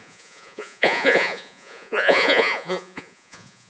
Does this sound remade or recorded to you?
remade